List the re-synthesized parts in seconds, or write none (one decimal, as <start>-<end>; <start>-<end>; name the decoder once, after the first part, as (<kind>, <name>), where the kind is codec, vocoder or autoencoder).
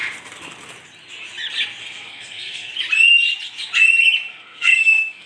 1.8-2.7 (codec, SNAC); 4.3-5.3